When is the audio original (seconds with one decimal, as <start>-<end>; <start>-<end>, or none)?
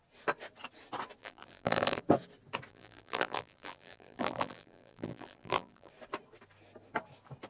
0.0-1.2; 2.0-2.7; 5.9-7.5